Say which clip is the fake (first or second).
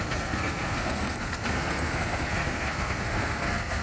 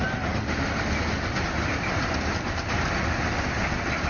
first